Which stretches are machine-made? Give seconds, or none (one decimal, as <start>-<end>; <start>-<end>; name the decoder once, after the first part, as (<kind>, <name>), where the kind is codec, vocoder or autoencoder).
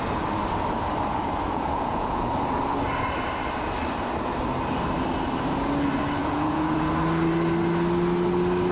1.2-2.3 (vocoder, Vocos); 6.2-6.9